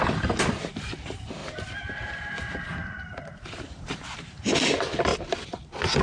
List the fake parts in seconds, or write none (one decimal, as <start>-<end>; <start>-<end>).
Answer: 1.4-2.3; 2.7-4.4; 5.1-5.6